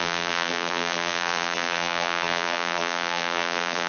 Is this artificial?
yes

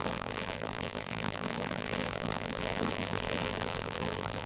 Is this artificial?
yes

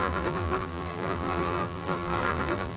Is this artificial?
yes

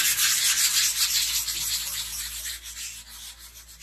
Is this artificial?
no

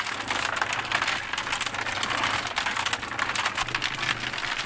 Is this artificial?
no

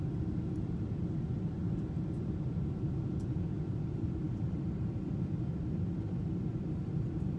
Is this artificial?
yes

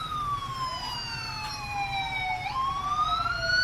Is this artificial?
no